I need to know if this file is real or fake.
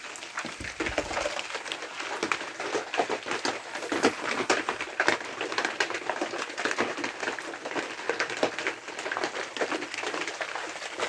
real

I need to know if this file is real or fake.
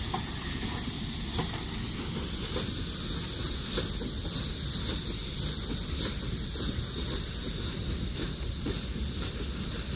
real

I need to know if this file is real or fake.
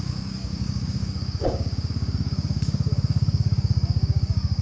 fake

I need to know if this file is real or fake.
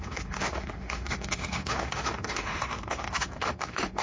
fake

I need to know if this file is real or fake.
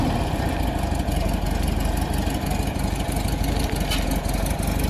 real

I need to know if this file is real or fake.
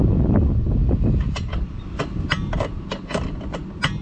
real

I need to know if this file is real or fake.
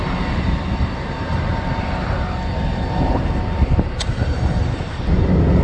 real